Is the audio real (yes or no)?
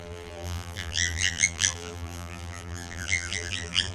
no